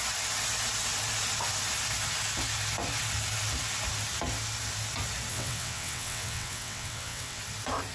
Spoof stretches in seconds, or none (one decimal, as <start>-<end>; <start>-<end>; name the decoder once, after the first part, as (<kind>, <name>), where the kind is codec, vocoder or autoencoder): 5.3-7.4 (vocoder, WaveNeXt)